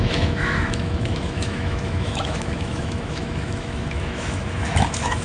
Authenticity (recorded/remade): remade